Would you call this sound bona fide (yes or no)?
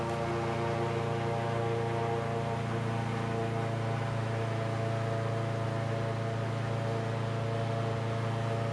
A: yes